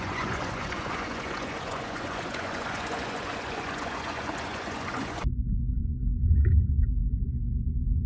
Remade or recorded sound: remade